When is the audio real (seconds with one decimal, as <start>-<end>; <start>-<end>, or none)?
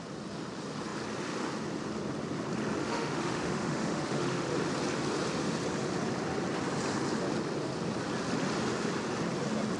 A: 0.0-2.8; 4.5-9.8